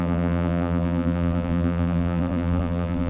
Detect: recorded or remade remade